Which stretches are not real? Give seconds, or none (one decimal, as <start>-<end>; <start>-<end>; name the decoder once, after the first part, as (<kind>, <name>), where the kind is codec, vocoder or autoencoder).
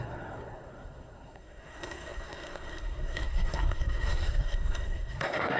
0.0-5.6 (codec, SNAC)